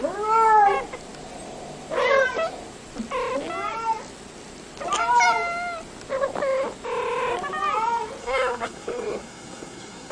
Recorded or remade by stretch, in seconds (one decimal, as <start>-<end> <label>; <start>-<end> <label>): 0.0-8.2 recorded; 8.2-10.1 remade